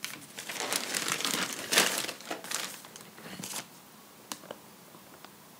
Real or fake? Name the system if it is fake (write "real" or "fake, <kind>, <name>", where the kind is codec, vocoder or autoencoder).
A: real